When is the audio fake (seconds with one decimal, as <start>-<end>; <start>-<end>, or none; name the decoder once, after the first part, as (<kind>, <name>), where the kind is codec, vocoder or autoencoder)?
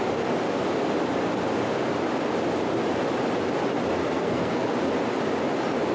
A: 4.0-4.7 (codec, SNAC)